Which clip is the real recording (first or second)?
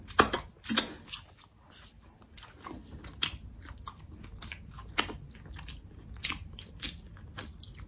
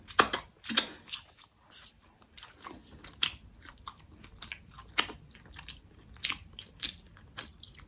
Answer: first